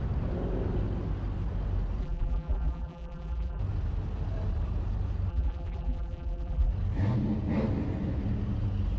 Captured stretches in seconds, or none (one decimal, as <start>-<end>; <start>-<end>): 0.0-2.0; 3.6-5.3; 6.7-9.0